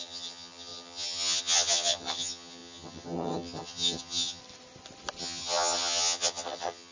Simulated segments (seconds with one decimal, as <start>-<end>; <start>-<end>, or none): 0.0-4.4; 5.2-6.9

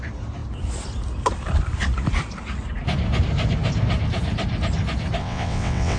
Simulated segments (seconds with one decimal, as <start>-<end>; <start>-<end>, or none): 5.2-6.0

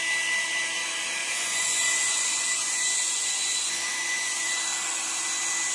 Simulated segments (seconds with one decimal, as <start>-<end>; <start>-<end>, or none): 1.2-4.6

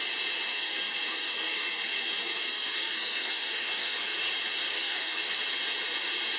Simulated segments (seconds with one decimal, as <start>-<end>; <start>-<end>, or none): 0.5-4.3; 4.7-5.4

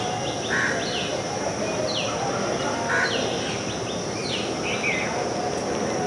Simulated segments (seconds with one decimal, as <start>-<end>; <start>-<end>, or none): none

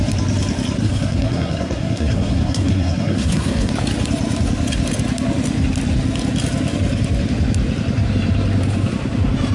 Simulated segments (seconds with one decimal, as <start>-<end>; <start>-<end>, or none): 0.8-3.7